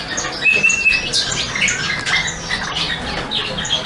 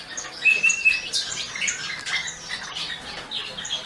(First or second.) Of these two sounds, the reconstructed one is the second